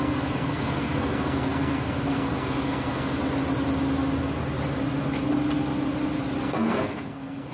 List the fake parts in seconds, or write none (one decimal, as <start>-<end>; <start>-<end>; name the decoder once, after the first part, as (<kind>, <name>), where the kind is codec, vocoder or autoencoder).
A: 0.0-3.2 (codec, SNAC); 6.4-7.5